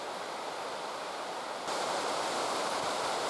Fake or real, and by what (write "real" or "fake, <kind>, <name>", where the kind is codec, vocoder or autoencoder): fake, vocoder, BigVGAN v2